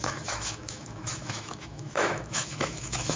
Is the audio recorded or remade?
remade